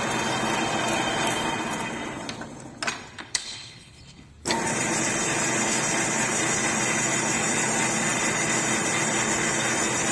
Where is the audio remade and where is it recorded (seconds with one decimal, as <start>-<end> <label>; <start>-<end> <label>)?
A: 0.0-3.2 recorded; 3.2-4.3 remade; 4.3-10.1 recorded